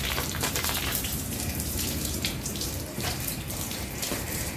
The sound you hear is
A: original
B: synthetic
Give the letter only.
B